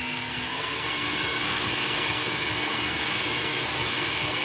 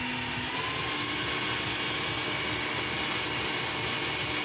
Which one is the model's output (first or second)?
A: first